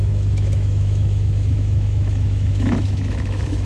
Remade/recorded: remade